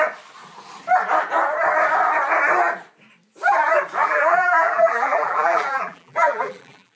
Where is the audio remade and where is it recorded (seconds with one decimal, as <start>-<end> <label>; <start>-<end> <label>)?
0.0-4.0 recorded; 4.0-7.0 remade